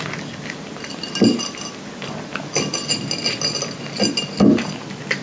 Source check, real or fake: real